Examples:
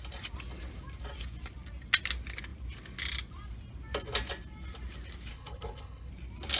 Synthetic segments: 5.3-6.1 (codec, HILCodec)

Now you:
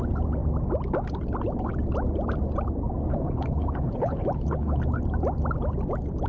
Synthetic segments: 3.1-4.8 (codec, HILCodec)

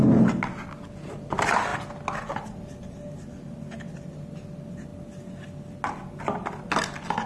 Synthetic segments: none